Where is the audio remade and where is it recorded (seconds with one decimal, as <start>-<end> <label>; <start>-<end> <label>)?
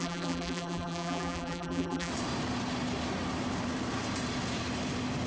0.0-2.1 remade; 2.1-5.3 recorded